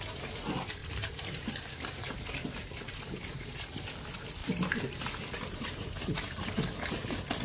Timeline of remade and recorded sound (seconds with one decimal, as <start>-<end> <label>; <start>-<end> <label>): 0.0-0.8 recorded; 0.8-1.5 remade; 1.5-4.4 recorded; 4.4-5.9 remade; 5.9-7.4 recorded

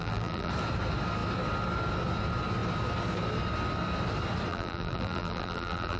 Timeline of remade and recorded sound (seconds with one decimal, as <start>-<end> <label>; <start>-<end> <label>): 0.0-0.5 remade; 0.5-4.5 recorded; 4.5-6.0 remade

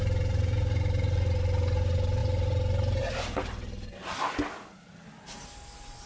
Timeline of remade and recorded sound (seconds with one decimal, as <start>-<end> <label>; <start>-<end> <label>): 0.0-6.1 recorded

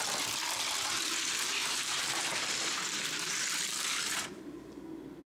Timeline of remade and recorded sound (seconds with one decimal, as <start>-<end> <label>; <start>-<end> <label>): 0.0-1.6 recorded; 1.6-4.8 remade; 4.8-5.4 recorded

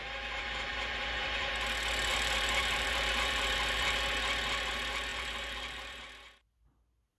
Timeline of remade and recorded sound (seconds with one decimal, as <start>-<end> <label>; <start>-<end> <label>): 0.0-0.4 recorded; 0.4-1.5 remade; 1.5-2.1 recorded; 2.1-4.0 remade; 4.0-5.1 recorded; 5.1-6.0 remade; 6.0-7.2 recorded